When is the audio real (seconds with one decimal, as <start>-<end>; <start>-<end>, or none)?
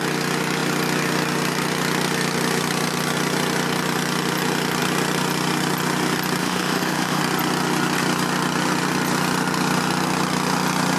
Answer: 0.0-6.4; 7.2-11.0